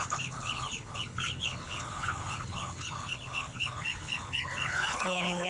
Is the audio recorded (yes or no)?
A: no